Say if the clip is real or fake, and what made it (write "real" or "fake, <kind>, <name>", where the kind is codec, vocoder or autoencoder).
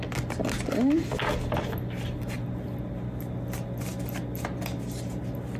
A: real